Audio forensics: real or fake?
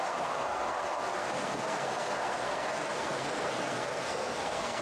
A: fake